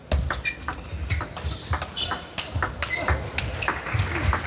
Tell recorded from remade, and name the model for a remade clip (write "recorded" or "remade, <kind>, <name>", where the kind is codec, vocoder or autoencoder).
recorded